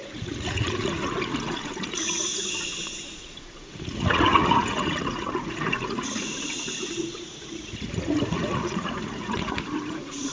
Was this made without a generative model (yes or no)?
no